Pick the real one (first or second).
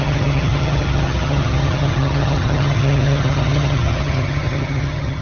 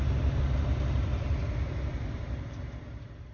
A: second